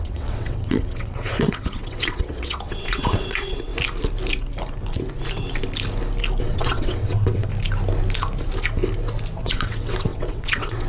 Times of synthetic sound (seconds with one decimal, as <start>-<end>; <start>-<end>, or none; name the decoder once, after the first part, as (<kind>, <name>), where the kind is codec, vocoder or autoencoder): 0.0-3.7 (vocoder, WaveNeXt); 6.4-7.5; 9.4-10.9